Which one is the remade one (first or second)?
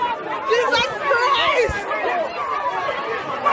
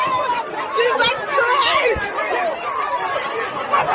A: second